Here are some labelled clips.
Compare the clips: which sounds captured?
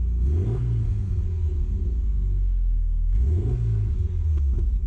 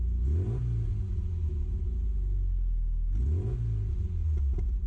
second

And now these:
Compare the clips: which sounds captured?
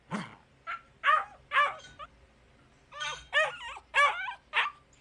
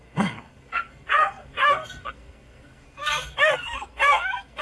first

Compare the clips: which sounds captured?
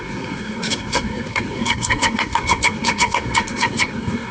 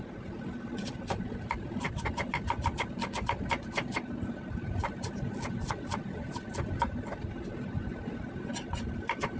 second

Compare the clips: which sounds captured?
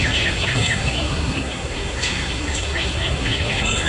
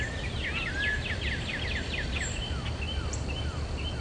second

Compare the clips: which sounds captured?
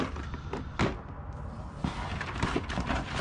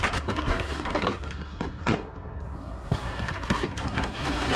first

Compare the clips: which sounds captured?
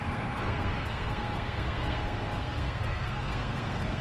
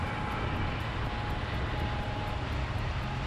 second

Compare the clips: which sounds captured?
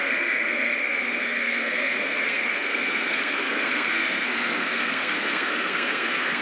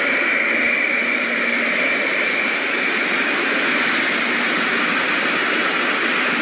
second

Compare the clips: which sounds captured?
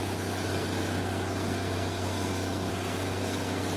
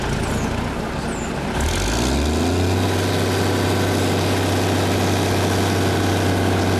second